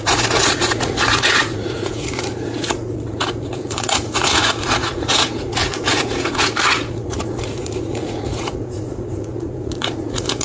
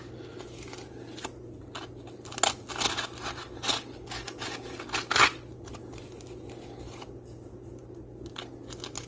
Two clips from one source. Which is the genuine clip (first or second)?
second